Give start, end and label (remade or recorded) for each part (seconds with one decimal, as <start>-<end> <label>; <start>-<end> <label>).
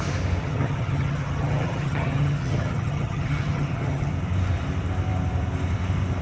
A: 0.0-0.4 recorded; 0.4-4.1 remade; 4.1-6.2 recorded